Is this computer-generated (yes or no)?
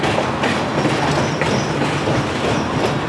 no